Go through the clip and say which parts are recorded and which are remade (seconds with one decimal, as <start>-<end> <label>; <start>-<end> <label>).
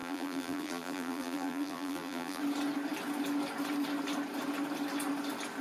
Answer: 0.0-2.4 remade; 2.4-5.6 recorded